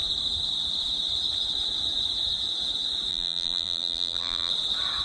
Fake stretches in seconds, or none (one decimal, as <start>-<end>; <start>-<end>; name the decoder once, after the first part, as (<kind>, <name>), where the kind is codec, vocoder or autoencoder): 3.1-4.5 (vocoder, BigVGAN v2)